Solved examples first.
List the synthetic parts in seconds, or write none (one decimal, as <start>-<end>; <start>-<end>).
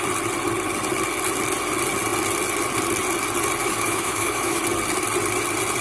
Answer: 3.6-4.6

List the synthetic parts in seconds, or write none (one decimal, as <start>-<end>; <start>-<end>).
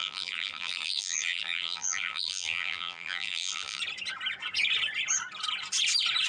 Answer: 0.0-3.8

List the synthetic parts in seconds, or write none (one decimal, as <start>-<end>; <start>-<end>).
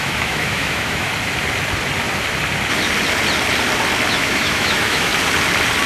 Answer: 0.0-1.1; 4.1-5.1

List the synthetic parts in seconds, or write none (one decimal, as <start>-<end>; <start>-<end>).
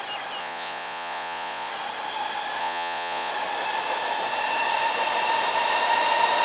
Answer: 0.4-1.7; 2.6-3.3